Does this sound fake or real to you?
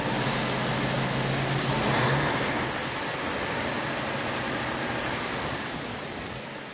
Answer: real